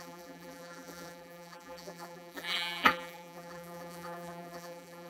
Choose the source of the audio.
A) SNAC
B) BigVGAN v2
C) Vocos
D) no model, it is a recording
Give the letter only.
B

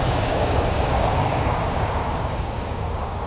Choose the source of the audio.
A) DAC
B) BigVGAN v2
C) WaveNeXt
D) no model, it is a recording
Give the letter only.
A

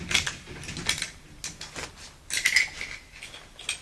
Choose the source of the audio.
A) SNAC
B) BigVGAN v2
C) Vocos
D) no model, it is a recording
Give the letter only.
D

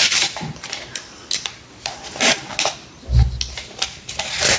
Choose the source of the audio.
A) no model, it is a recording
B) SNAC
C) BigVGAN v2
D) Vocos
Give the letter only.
A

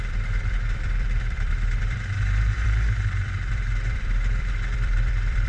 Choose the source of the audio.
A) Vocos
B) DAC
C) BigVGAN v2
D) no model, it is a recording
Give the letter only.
C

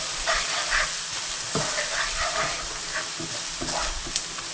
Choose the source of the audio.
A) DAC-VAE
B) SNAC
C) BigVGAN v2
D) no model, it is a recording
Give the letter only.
D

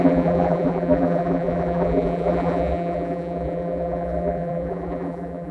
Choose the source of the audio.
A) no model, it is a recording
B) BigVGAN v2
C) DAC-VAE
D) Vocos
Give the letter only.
B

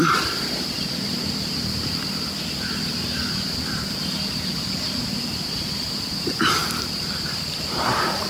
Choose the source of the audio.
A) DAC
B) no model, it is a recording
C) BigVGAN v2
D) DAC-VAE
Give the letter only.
C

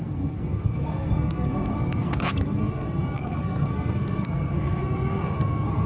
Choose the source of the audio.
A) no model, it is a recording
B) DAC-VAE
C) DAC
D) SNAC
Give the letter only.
D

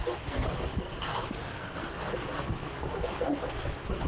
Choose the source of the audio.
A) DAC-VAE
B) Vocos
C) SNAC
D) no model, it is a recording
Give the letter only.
C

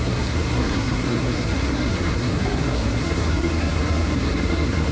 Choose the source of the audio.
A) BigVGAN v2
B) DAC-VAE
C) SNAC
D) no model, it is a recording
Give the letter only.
C